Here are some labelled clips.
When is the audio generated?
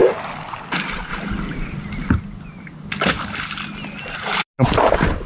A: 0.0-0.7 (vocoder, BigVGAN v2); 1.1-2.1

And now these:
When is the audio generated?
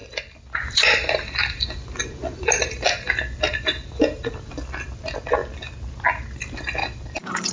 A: 0.0-4.5 (vocoder, BigVGAN v2); 6.8-7.5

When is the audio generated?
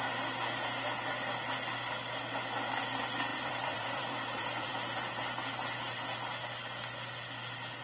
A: 3.3-4.7 (vocoder, BigVGAN v2)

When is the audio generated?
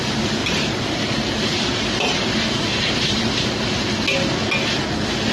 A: 0.4-3.5 (vocoder, BigVGAN v2)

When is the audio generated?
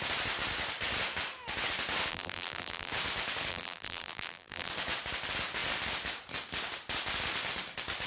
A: 2.1-2.9 (vocoder, BigVGAN v2); 3.5-4.7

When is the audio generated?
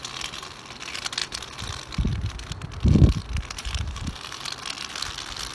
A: 3.6-4.5 (vocoder, BigVGAN v2)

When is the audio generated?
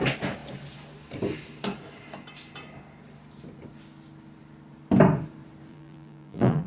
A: 5.7-6.7 (vocoder, BigVGAN v2)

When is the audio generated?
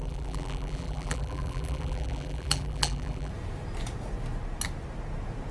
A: 0.0-3.3 (vocoder, BigVGAN v2)